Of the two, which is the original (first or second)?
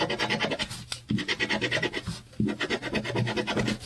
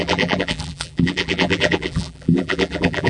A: first